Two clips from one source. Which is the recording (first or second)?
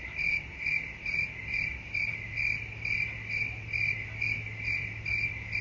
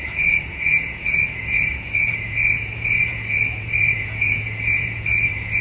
first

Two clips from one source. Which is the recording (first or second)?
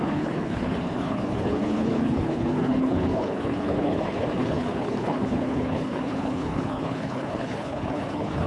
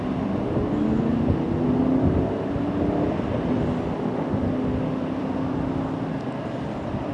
second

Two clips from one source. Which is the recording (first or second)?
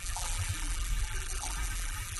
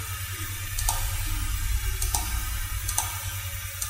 second